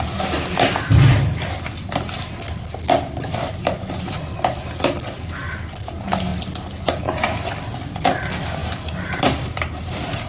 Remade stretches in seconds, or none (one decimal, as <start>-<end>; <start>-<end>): 8.6-10.3

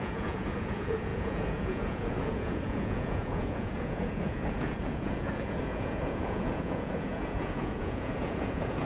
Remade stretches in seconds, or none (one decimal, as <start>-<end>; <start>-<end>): 0.0-8.9

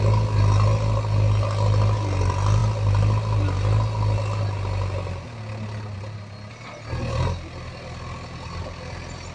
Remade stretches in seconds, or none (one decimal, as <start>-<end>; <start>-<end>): none

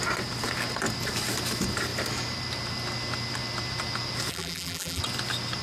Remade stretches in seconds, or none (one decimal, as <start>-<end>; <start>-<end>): 4.3-5.0

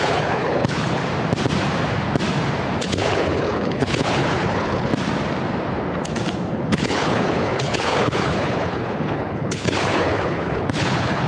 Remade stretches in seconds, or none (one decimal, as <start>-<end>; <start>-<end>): 0.0-1.0; 2.8-4.9; 6.5-11.3